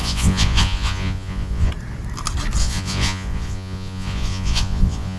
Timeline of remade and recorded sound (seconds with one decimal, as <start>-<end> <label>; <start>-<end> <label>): 0.0-1.7 remade; 1.7-2.6 recorded; 2.6-5.2 remade